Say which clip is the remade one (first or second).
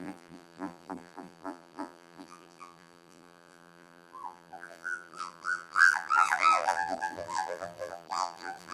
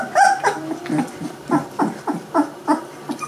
first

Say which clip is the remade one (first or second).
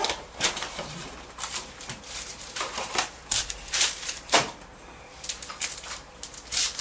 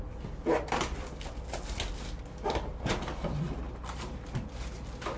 first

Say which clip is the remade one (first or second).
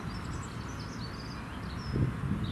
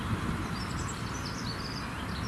second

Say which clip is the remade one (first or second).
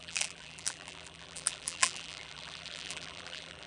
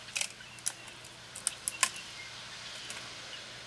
first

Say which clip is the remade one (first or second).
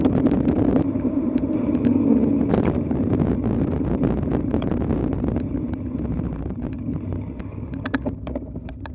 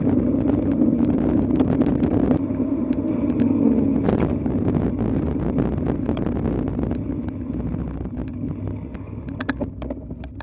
first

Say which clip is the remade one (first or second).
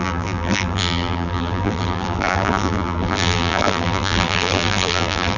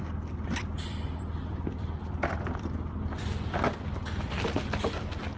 first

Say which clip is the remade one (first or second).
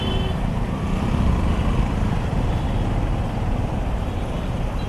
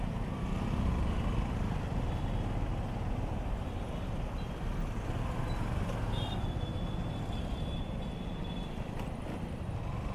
first